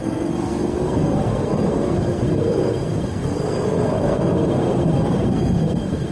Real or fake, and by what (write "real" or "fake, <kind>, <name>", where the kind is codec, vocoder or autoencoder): fake, codec, SNAC